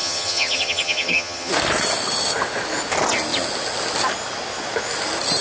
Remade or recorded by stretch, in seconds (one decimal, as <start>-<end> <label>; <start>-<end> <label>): 0.0-1.5 remade; 1.5-5.4 recorded